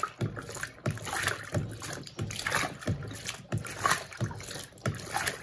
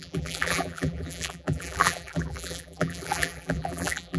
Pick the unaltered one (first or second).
first